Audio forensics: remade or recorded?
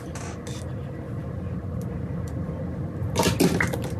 recorded